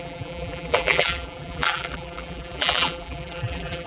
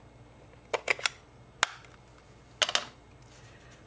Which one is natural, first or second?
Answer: second